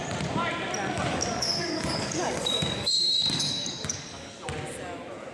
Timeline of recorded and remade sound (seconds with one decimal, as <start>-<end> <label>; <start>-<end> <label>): 0.0-1.1 recorded; 1.1-4.3 remade; 4.3-5.3 recorded